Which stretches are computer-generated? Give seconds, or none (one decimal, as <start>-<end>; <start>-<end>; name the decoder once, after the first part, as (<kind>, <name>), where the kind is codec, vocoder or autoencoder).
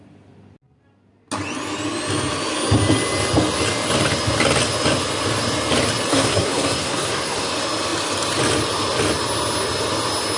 6.1-7.5 (codec, SNAC)